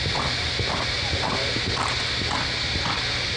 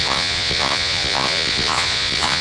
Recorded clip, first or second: first